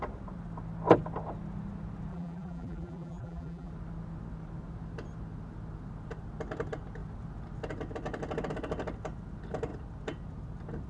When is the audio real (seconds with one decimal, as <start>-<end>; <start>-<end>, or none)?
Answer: 0.0-2.1; 3.7-10.9